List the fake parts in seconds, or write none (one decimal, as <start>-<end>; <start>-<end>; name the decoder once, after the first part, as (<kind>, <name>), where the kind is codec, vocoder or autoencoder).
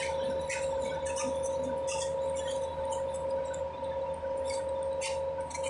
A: none